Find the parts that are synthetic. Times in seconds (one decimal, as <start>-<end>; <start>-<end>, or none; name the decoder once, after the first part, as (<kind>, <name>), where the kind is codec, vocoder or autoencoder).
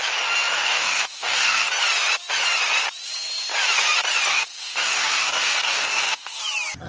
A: 0.5-1.7 (codec, DAC); 4.3-6.4